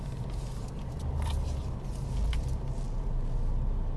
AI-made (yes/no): no